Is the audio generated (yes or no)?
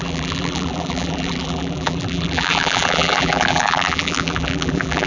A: yes